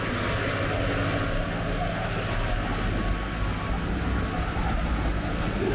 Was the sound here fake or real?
real